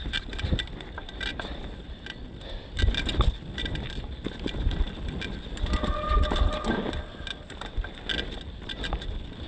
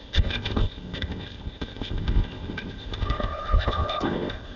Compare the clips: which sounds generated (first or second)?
second